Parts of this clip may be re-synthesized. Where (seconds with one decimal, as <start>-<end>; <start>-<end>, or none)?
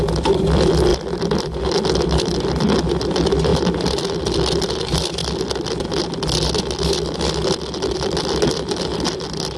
0.0-5.2; 6.5-9.6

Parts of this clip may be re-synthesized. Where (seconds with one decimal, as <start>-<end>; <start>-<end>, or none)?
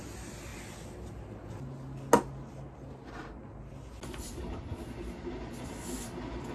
none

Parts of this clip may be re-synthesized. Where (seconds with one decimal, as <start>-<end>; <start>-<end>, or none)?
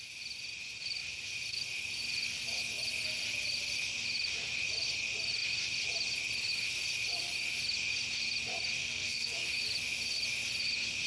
8.8-9.5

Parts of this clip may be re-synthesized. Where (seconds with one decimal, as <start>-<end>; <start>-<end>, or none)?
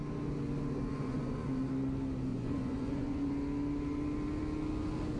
0.9-1.7; 2.3-3.3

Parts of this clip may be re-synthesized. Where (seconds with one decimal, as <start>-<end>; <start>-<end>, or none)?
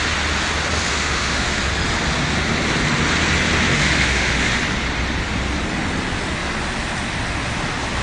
0.9-1.6; 3.7-4.6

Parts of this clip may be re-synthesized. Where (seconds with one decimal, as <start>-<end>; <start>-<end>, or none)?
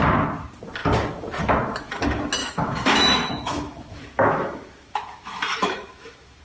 2.4-6.4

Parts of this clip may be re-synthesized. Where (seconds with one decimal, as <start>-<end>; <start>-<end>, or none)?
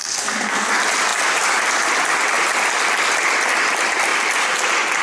0.0-0.7